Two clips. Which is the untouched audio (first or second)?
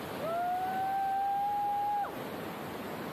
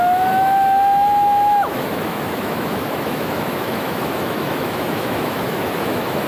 first